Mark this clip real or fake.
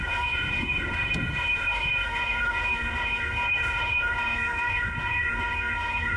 fake